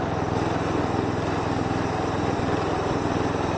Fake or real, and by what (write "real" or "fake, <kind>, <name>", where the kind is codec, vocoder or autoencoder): real